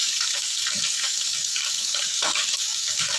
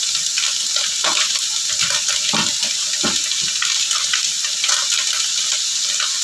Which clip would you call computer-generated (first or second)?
first